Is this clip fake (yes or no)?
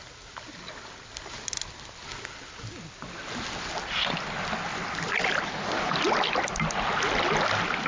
no